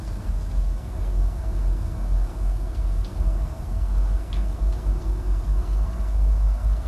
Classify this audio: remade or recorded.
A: remade